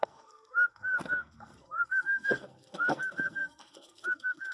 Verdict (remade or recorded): remade